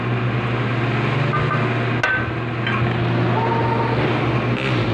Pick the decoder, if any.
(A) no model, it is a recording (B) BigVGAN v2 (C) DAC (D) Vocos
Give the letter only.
A